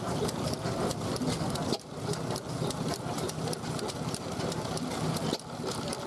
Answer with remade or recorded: recorded